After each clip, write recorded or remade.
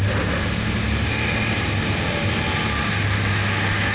recorded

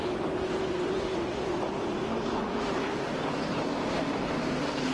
recorded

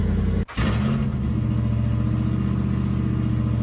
recorded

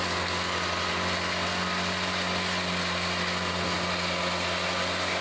recorded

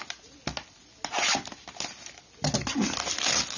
recorded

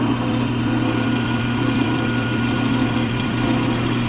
remade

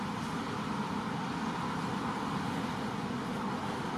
recorded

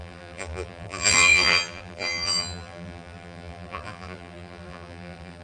remade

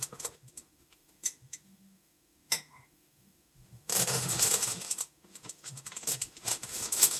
remade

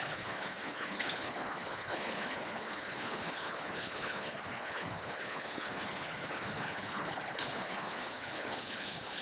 remade